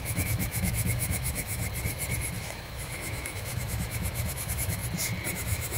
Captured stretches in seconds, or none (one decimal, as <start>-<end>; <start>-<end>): 1.6-2.4; 4.8-5.3